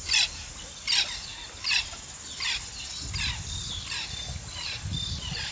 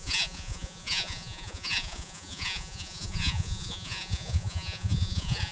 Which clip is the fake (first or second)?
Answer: second